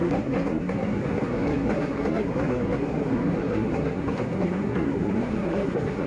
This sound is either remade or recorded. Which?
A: remade